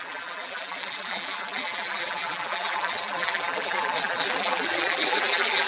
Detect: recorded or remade remade